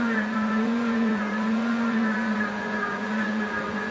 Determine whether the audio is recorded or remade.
remade